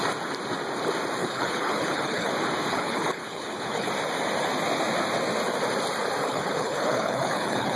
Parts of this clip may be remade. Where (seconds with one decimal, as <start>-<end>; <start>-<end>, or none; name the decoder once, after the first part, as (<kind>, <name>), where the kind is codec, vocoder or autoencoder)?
1.2-2.3 (codec, HILCodec); 2.7-3.9; 6.2-7.8